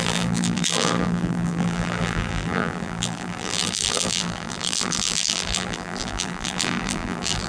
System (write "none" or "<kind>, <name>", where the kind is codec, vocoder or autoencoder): vocoder, BigVGAN v2